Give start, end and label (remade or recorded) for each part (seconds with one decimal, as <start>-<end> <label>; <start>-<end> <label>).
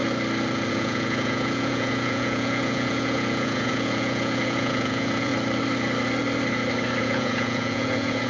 0.0-0.7 recorded; 0.7-5.3 remade; 5.3-7.0 recorded; 7.0-8.3 remade